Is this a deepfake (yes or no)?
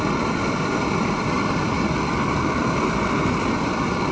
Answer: yes